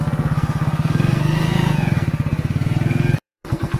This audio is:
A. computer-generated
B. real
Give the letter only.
A